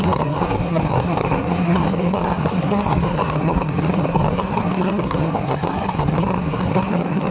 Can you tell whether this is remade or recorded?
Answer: remade